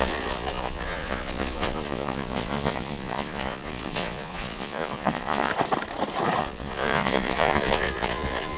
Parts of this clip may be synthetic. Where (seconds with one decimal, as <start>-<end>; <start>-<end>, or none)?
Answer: 0.0-5.5; 6.4-8.6